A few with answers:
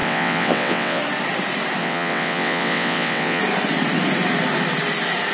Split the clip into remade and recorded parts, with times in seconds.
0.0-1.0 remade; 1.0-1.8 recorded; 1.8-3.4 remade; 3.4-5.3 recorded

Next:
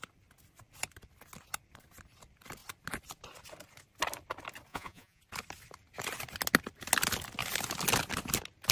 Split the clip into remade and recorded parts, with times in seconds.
0.0-4.7 recorded; 4.7-5.2 remade; 5.2-8.7 recorded

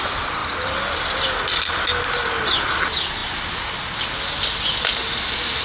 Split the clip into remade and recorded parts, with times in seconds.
0.0-5.6 recorded

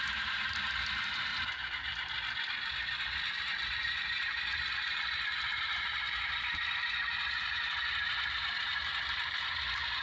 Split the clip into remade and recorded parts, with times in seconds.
0.0-1.3 remade; 1.3-3.3 recorded; 3.3-10.0 remade

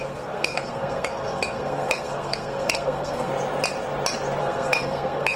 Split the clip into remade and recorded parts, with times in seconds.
0.0-3.3 remade; 3.3-4.4 recorded; 4.4-5.4 remade